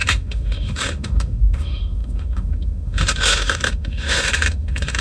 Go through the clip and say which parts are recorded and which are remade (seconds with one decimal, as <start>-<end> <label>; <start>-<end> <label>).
0.0-5.0 remade